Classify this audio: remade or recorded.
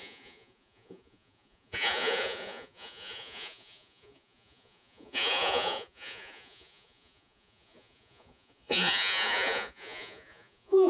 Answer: remade